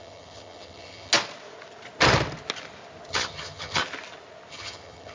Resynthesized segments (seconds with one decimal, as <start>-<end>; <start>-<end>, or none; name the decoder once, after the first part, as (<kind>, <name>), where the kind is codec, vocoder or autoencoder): 0.0-1.1 (vocoder, HiFi-GAN); 3.1-3.8; 4.5-5.1